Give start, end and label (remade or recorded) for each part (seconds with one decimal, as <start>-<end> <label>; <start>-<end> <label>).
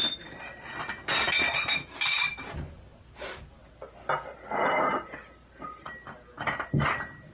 0.0-0.9 remade; 0.9-7.3 recorded